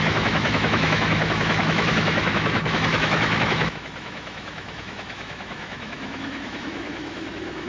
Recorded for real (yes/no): no